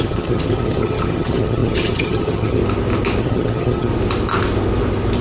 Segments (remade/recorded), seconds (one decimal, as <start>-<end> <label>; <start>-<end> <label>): 0.0-2.6 remade; 2.6-3.2 recorded; 3.2-3.9 remade; 3.9-5.2 recorded

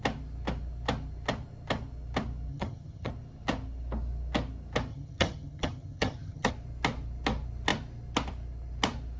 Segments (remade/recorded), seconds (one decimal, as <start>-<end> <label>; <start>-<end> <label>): 0.0-2.5 recorded; 2.5-3.1 remade; 3.1-4.9 recorded; 4.9-6.5 remade; 6.5-9.2 recorded

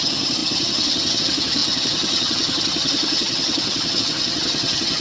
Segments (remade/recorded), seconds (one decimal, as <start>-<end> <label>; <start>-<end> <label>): 0.0-5.0 remade

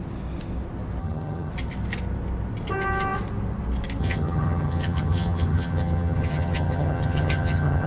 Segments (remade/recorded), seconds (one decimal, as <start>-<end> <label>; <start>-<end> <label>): 0.0-1.0 recorded; 1.0-1.5 remade; 1.5-4.0 recorded; 4.0-7.9 remade

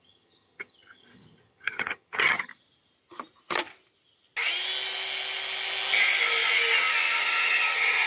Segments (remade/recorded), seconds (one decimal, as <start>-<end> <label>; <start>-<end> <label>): 0.0-2.5 remade; 2.5-7.2 recorded; 7.2-8.1 remade

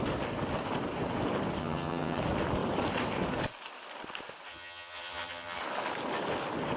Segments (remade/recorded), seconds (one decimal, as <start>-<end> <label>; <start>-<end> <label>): 0.0-1.6 recorded; 1.6-2.2 remade; 2.2-4.5 recorded; 4.5-5.6 remade; 5.6-6.8 recorded

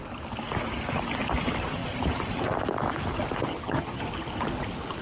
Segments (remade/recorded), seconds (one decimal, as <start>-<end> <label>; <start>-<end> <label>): 0.0-3.5 recorded; 3.5-4.0 remade; 4.0-5.0 recorded

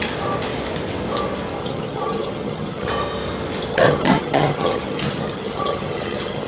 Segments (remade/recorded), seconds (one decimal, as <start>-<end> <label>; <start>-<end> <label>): 0.0-1.6 recorded; 1.6-2.9 remade; 2.9-3.7 recorded; 3.7-6.5 remade